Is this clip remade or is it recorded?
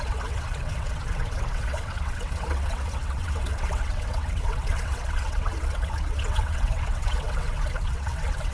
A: remade